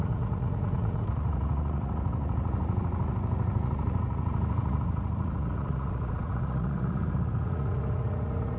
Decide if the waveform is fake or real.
fake